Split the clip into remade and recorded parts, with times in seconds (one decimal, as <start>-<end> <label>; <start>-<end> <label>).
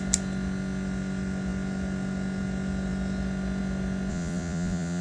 0.0-4.1 recorded; 4.1-5.0 remade